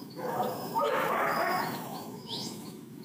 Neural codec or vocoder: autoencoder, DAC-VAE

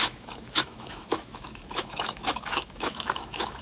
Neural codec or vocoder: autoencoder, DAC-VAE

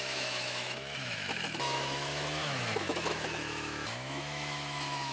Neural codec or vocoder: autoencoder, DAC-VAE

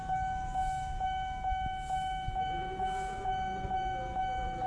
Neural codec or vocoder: autoencoder, DAC-VAE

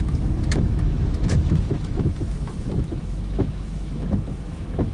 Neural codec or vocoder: autoencoder, DAC-VAE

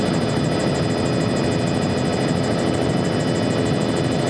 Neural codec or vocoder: none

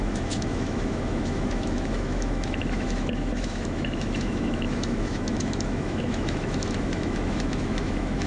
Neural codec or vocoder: autoencoder, DAC-VAE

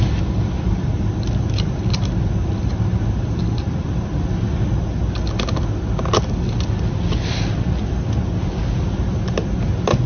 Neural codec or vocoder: none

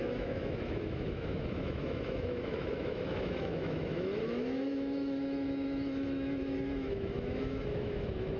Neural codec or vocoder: autoencoder, DAC-VAE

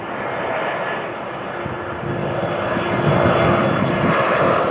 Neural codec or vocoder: none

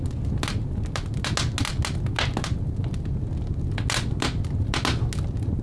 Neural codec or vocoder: none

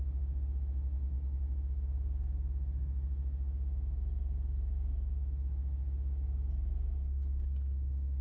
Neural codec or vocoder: none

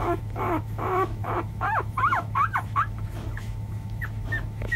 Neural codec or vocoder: autoencoder, DAC-VAE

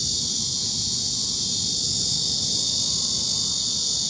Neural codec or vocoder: none